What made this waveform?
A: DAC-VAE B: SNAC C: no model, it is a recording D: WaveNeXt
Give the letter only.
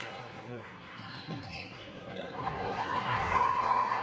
B